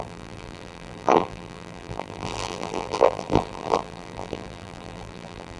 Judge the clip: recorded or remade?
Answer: remade